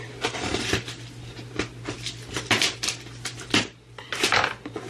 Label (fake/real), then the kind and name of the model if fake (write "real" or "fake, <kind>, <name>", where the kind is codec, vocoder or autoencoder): real